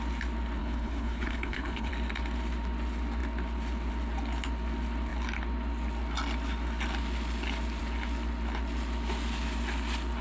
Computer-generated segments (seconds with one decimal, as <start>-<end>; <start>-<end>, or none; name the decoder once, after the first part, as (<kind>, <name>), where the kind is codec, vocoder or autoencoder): 0.6-1.9 (codec, HILCodec)